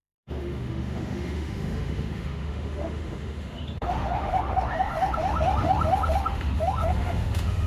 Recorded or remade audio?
remade